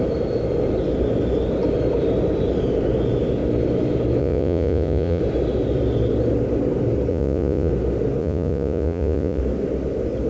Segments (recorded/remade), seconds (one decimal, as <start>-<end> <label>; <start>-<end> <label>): 0.0-4.2 recorded; 4.2-5.2 remade; 5.2-7.1 recorded; 7.1-7.7 remade; 7.7-8.2 recorded; 8.2-9.4 remade; 9.4-10.3 recorded